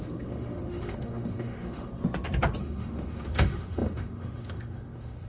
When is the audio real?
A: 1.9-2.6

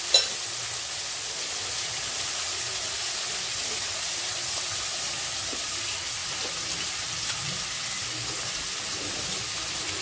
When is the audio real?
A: 0.0-10.0